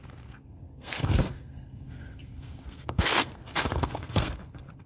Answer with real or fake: fake